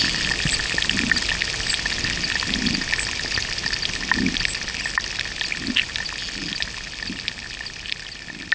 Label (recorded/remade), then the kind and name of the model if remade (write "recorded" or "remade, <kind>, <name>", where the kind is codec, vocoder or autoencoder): recorded